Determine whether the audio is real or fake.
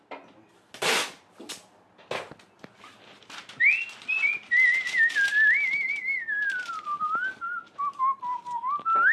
real